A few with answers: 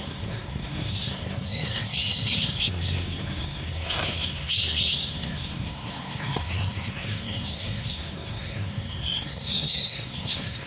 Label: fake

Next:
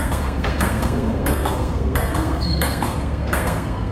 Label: fake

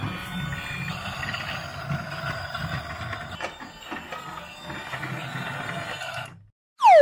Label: real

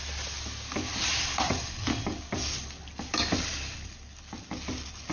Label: real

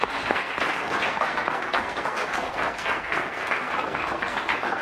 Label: fake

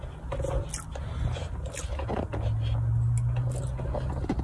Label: real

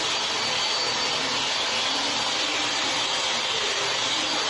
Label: real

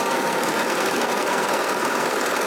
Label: fake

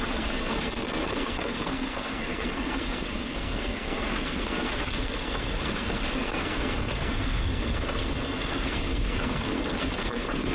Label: fake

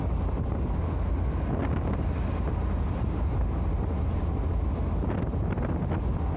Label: real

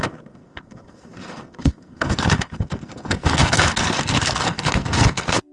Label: fake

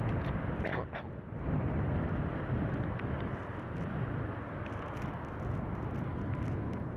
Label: real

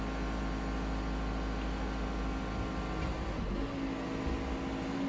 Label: real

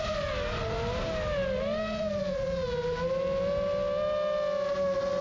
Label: real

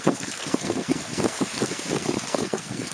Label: fake